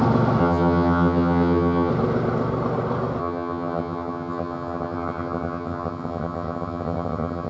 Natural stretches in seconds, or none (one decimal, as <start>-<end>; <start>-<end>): 0.0-0.4; 1.9-3.2